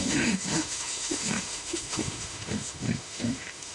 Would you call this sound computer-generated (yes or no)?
yes